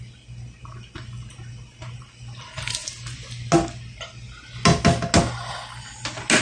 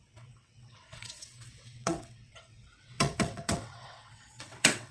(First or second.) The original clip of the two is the first